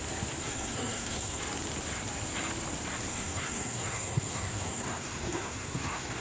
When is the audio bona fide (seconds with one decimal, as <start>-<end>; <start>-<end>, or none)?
0.0-0.4; 1.4-3.1